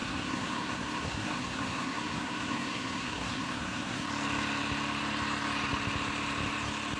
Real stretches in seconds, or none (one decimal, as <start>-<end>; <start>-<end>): 4.1-7.0